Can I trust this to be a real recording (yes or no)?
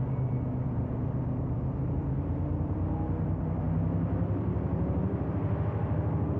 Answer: no